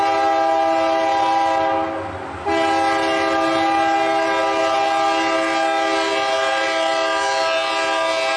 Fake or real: real